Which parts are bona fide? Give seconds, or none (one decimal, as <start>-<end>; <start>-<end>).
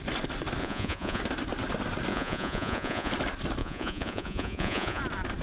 0.0-0.6; 1.2-2.1; 3.1-3.6; 5.0-5.4